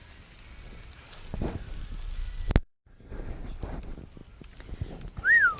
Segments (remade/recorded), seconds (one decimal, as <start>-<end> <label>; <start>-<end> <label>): 0.0-2.6 recorded; 2.6-3.3 remade; 3.3-5.6 recorded